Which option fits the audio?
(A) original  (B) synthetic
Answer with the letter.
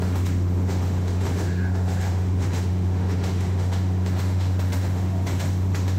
B